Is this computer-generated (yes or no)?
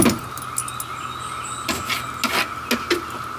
no